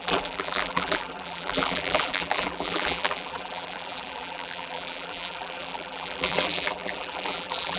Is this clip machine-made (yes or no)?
yes